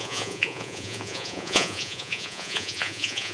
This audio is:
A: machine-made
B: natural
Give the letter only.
A